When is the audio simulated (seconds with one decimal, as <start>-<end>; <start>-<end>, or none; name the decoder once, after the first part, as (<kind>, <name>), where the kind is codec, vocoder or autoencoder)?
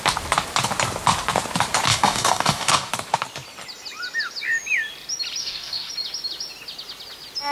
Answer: 1.9-2.9 (codec, DAC); 5.4-5.9